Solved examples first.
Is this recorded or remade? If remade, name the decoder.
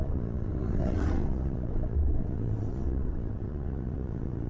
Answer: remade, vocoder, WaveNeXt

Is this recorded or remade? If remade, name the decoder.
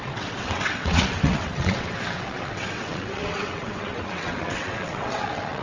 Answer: remade, vocoder, WaveNeXt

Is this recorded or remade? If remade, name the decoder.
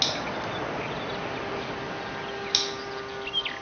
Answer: recorded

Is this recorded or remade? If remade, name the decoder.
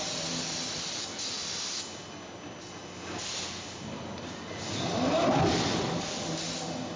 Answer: recorded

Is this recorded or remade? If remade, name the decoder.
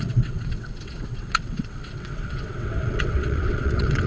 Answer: remade, vocoder, WaveNeXt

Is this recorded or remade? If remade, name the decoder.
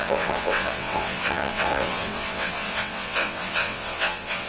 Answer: remade, vocoder, WaveNeXt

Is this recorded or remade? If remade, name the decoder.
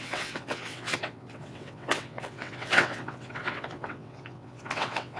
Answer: remade, vocoder, WaveNeXt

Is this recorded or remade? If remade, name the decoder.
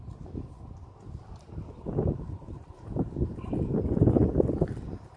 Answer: recorded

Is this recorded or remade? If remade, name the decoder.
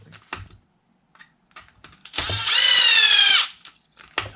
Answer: recorded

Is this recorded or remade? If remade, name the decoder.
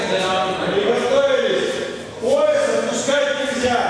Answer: recorded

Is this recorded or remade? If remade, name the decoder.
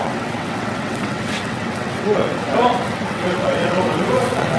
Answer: remade, vocoder, WaveNeXt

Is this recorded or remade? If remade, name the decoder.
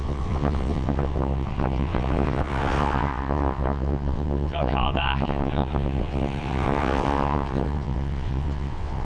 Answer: remade, vocoder, WaveNeXt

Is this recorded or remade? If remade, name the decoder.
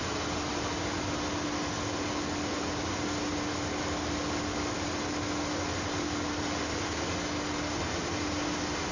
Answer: recorded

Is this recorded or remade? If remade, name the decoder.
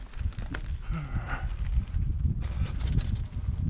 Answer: recorded